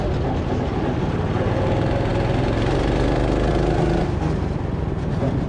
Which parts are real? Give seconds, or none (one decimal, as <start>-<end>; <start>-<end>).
0.0-5.5